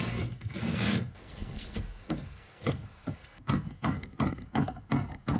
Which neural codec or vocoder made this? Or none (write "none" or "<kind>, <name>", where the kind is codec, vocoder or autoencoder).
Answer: codec, SNAC